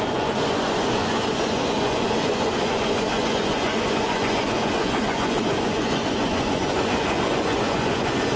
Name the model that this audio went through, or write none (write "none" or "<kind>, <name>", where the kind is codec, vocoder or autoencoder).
vocoder, Vocos